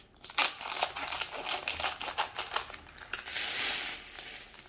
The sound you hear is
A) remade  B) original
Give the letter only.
B